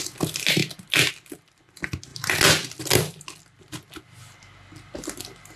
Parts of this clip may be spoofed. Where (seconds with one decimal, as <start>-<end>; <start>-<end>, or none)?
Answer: 2.1-2.8